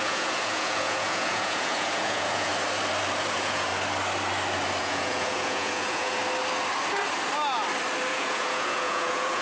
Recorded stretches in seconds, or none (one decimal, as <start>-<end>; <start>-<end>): 2.5-3.3; 3.7-4.8; 6.2-8.1